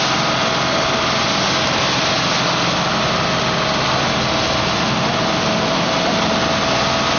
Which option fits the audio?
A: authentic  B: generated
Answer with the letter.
A